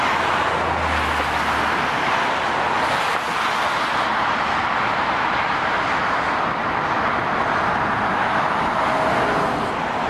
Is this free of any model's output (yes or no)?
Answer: yes